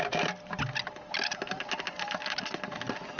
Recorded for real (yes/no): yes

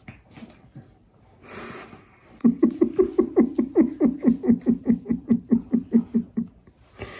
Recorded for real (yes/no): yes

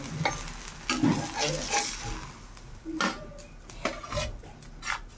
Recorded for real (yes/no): yes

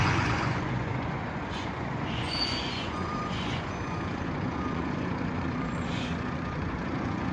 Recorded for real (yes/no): no